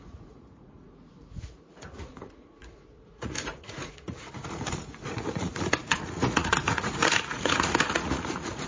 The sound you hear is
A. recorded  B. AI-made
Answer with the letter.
B